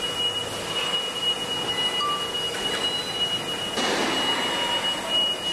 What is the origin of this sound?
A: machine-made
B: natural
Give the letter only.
B